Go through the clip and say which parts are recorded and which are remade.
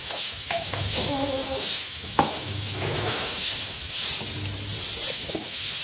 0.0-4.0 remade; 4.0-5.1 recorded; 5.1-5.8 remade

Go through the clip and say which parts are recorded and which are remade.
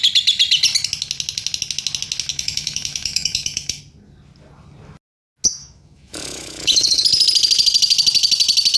0.0-2.3 recorded; 2.3-3.8 remade; 3.8-5.6 recorded; 5.6-7.0 remade; 7.0-8.8 recorded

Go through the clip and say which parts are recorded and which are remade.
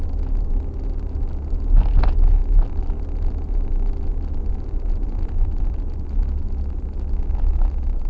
0.0-8.1 recorded